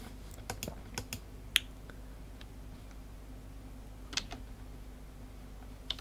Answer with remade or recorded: recorded